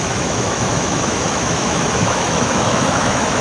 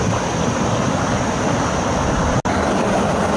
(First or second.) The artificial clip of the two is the first